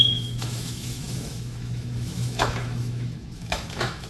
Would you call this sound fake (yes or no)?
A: yes